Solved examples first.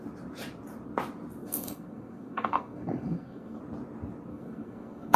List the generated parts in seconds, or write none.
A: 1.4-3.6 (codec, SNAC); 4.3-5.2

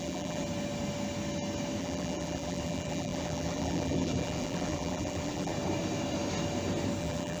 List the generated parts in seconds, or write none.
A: 0.0-0.4 (vocoder, BigVGAN v2); 1.8-5.5; 7.0-7.4

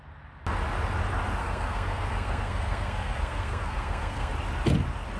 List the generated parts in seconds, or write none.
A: 1.4-4.3 (codec, SNAC)

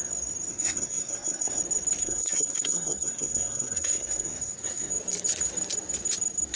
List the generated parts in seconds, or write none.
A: 0.5-1.6 (codec, SNAC); 2.0-4.9